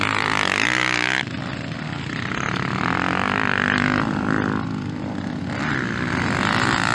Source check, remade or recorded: recorded